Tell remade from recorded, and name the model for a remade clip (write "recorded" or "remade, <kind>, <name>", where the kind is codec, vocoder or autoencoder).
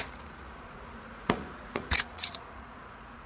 remade, vocoder, Vocos